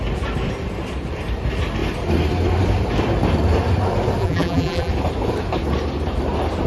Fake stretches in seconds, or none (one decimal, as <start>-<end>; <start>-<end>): 4.2-4.9